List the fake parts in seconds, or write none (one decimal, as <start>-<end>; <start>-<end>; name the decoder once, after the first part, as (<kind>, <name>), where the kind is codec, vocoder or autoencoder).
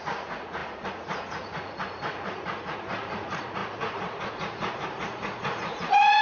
0.0-6.2 (vocoder, Vocos)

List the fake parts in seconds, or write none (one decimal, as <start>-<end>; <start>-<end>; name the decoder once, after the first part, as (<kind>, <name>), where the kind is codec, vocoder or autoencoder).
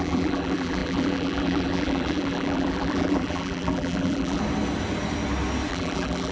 0.0-4.4 (vocoder, BigVGAN v2); 5.7-6.3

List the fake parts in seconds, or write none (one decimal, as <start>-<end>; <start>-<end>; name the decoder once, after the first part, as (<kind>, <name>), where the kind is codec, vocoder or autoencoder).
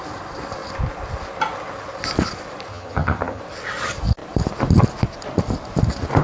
2.7-3.4 (vocoder, HiFi-GAN)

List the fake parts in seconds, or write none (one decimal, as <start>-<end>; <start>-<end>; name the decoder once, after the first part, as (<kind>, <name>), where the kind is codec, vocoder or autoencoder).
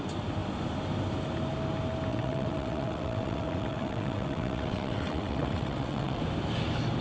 2.1-6.2 (vocoder, WaveNeXt)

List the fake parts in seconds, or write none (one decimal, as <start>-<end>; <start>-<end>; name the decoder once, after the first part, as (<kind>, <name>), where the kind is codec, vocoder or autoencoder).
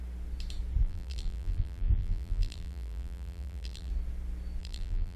0.8-3.9 (vocoder, BigVGAN v2); 4.6-5.2